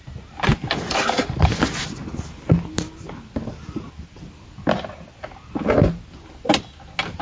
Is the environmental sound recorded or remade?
recorded